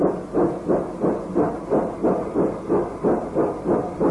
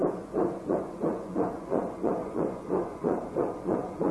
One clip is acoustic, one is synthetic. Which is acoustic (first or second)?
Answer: first